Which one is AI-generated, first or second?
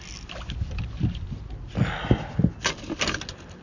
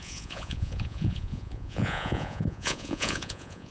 second